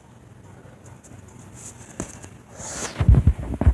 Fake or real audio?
real